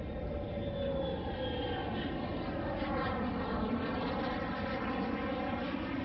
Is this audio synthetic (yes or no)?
no